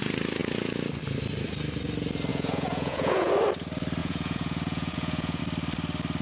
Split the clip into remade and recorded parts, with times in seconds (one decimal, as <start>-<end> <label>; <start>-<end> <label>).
0.0-2.3 recorded; 2.3-3.3 remade; 3.3-4.0 recorded; 4.0-5.4 remade; 5.4-6.2 recorded